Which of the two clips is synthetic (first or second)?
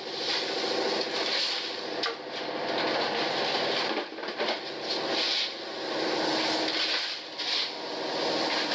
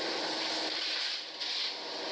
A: second